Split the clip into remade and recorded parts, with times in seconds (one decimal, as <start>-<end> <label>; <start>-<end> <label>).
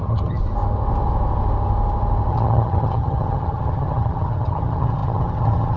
0.0-0.4 remade; 0.4-2.3 recorded; 2.3-5.8 remade